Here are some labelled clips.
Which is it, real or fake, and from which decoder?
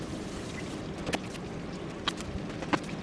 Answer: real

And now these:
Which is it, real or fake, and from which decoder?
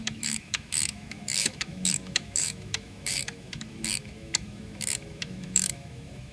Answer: fake, autoencoder, DAC-VAE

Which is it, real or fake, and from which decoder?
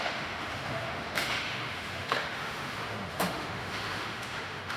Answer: fake, autoencoder, DAC-VAE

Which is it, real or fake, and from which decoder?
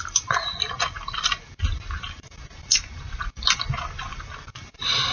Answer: real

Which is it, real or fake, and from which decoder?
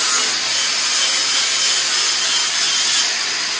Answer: real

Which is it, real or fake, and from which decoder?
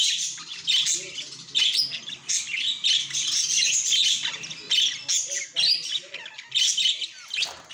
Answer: real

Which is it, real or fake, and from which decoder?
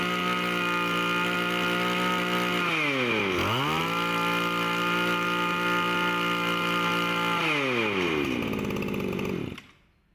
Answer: real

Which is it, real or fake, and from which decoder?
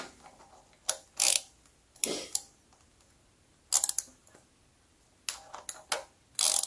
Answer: real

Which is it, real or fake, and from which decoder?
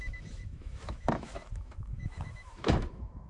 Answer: fake, autoencoder, DAC-VAE